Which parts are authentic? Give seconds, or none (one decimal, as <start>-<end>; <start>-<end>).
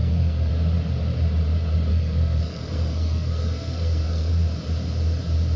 0.5-1.9; 4.3-5.6